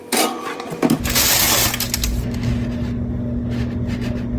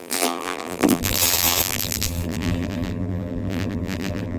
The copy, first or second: second